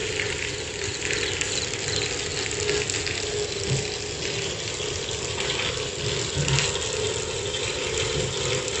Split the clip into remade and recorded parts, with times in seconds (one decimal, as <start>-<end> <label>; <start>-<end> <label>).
0.0-8.8 recorded